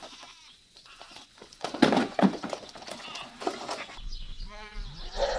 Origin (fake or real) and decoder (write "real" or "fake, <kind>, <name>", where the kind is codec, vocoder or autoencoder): fake, vocoder, Vocos